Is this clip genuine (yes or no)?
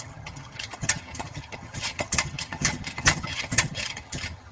no